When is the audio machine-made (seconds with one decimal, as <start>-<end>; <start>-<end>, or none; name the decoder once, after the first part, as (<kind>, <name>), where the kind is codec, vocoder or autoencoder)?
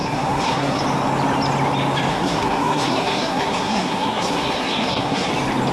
0.0-0.8 (codec, SNAC); 2.1-5.3